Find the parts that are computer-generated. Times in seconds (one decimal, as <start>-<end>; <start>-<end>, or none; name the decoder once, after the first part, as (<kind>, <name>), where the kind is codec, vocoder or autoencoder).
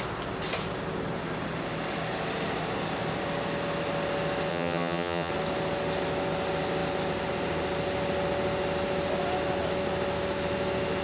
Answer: 4.5-5.3 (vocoder, HiFi-GAN)